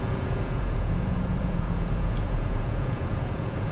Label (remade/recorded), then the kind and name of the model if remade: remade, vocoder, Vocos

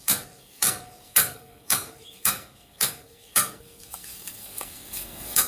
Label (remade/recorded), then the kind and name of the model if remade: remade, codec, SNAC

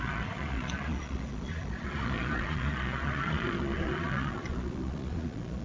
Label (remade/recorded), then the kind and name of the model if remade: remade, vocoder, Vocos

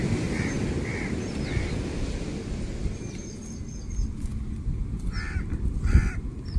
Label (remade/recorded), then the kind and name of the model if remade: recorded